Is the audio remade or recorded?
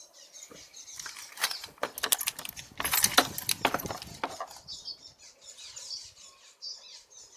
recorded